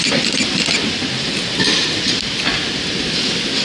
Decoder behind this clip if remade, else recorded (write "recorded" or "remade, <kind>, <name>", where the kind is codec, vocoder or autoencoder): recorded